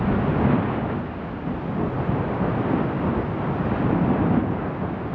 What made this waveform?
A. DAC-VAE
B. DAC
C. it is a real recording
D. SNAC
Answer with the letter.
C